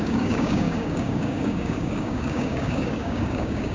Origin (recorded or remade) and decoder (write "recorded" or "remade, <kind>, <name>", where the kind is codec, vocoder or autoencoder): remade, codec, DAC